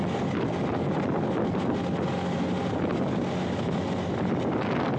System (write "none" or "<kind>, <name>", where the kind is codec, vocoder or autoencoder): none